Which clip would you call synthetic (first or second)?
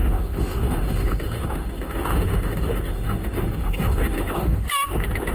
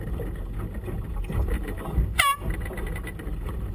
first